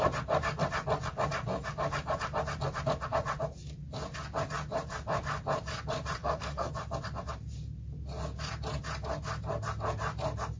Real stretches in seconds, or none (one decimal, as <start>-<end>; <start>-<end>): 0.0-6.2; 6.7-10.6

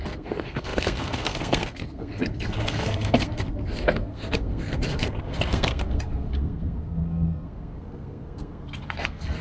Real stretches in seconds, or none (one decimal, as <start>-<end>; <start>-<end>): none

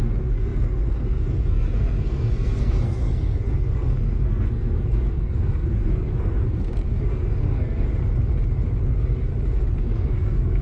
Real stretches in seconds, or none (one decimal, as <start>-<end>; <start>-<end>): 7.9-8.8; 9.3-9.8

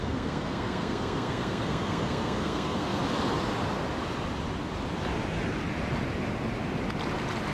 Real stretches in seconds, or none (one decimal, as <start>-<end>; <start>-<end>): 3.0-7.5

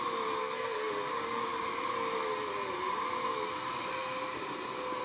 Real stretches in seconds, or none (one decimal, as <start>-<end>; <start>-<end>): 0.0-0.4; 0.9-5.0

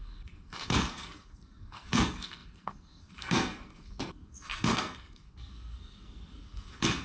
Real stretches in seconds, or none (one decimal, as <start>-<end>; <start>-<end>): none

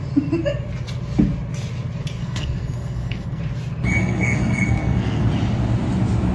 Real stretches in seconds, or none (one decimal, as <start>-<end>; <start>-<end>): 0.0-2.2; 3.4-4.0; 5.3-6.3